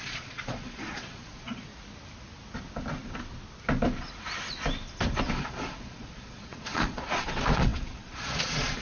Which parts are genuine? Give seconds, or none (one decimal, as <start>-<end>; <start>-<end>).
1.7-5.3